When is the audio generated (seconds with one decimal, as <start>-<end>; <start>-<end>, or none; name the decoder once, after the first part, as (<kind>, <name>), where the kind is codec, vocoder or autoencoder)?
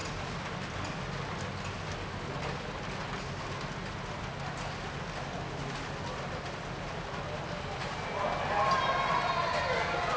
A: none